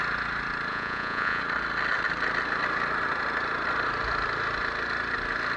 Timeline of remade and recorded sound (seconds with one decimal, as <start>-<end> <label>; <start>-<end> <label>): 0.0-0.7 recorded; 0.7-1.4 remade; 1.4-5.6 recorded